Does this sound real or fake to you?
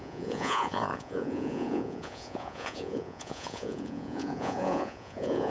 fake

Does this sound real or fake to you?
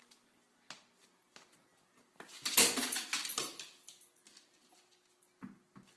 real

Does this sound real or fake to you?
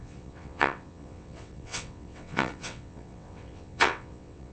fake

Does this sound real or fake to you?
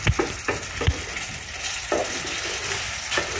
real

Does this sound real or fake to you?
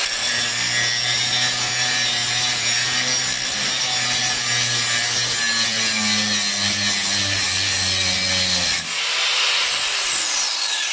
real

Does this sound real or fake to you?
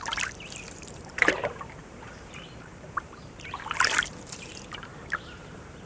fake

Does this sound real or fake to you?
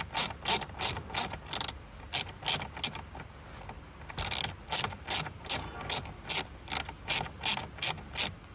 real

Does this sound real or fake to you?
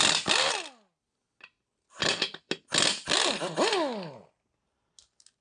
real